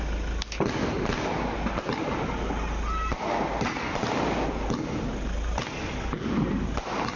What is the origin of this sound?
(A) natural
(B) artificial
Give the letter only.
A